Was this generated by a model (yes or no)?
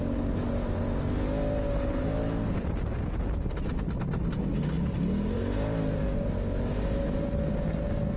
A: no